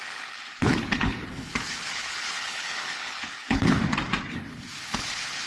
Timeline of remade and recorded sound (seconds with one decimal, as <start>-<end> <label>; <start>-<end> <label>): 0.0-3.8 remade; 3.8-4.3 recorded; 4.3-5.5 remade